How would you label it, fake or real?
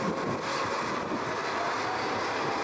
real